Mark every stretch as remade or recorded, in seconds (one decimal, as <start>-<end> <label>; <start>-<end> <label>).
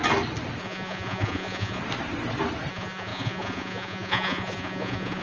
0.0-0.6 recorded; 0.6-1.8 remade; 1.8-2.7 recorded; 2.7-5.2 remade